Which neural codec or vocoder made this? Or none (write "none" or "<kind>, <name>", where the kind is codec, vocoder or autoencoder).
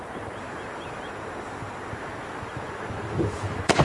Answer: none